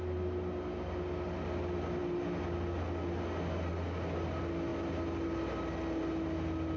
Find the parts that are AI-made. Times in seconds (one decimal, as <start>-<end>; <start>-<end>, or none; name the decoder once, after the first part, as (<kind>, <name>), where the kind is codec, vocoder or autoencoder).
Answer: none